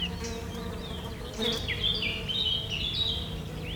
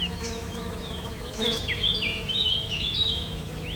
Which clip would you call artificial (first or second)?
second